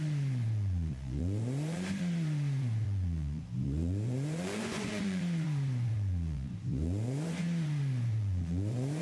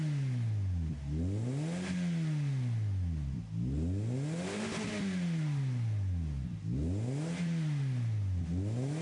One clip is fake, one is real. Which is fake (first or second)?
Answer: first